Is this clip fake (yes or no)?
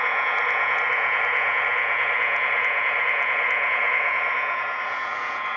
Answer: yes